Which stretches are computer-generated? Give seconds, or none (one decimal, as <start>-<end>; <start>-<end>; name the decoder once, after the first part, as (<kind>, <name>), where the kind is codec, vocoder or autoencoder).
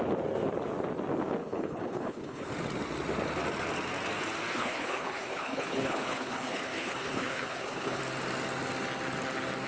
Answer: 1.4-2.5 (codec, HILCodec); 4.5-8.0